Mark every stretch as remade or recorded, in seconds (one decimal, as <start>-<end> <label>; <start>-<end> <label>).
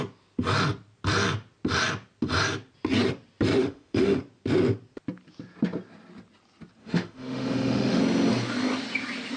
0.0-3.6 recorded; 3.6-4.2 remade; 4.2-6.8 recorded; 6.8-8.0 remade; 8.0-9.4 recorded